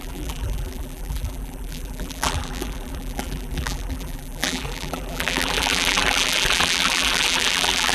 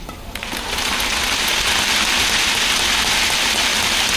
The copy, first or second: first